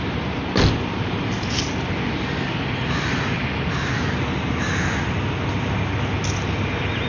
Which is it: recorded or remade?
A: recorded